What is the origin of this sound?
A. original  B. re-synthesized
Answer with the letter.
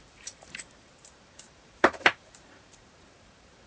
B